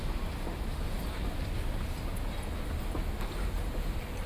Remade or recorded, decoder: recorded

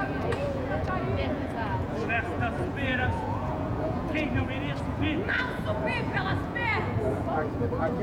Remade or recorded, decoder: remade, vocoder, Vocos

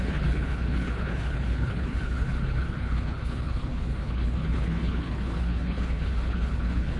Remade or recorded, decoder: remade, codec, HILCodec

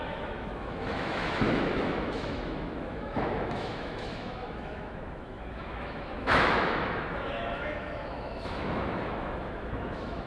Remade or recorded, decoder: remade, autoencoder, DAC-VAE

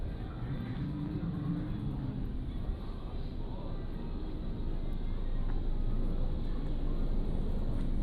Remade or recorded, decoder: recorded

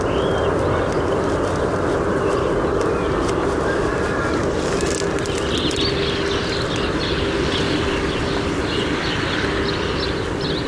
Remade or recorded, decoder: recorded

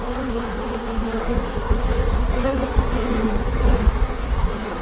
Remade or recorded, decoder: remade, codec, SNAC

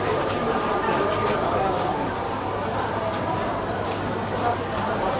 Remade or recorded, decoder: remade, vocoder, BigVGAN v2